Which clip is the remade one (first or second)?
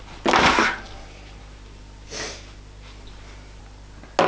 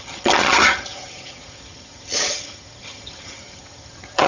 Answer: second